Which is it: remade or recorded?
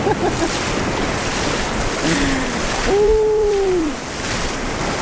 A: remade